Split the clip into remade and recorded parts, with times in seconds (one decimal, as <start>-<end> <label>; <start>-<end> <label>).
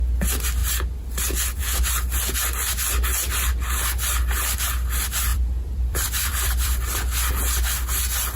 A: 0.0-5.3 recorded; 5.3-7.3 remade; 7.3-8.4 recorded